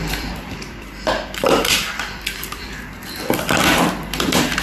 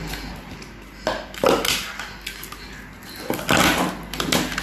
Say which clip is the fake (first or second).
first